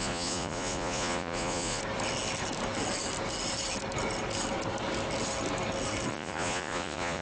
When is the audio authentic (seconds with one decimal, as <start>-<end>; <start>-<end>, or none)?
1.8-6.1